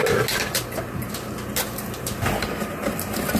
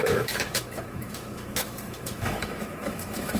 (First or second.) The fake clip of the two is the second